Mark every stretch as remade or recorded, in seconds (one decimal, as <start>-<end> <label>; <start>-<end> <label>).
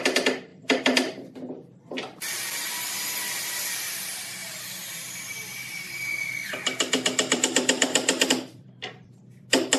0.0-0.5 recorded; 0.5-1.9 remade; 1.9-4.4 recorded; 4.4-9.2 remade; 9.2-9.8 recorded